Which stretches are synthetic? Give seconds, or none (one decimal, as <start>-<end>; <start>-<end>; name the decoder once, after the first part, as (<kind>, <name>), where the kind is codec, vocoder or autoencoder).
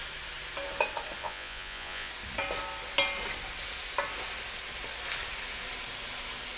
1.2-2.1 (vocoder, Vocos)